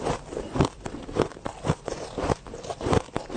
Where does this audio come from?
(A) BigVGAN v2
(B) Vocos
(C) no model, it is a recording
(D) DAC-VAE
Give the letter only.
A